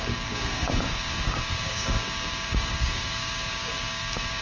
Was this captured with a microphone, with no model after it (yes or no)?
no